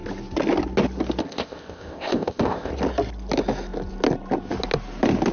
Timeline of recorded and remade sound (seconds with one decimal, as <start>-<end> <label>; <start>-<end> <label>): 0.0-1.2 recorded; 1.2-2.7 remade; 2.7-5.3 recorded